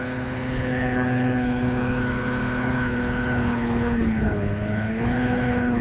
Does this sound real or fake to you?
fake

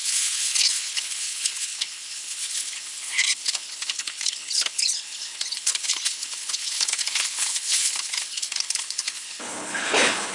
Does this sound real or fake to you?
fake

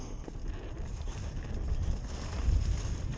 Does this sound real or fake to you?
real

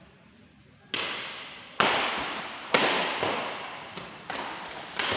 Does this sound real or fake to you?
real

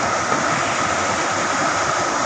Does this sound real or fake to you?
real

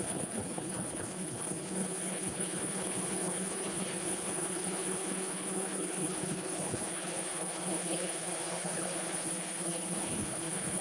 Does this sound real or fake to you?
fake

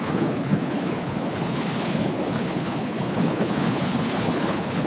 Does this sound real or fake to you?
fake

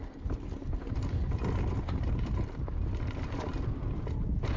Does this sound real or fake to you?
real